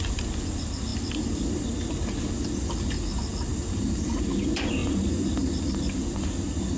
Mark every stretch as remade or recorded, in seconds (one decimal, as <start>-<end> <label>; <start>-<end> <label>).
0.0-6.8 recorded